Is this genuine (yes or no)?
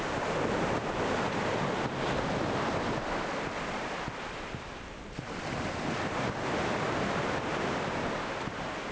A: yes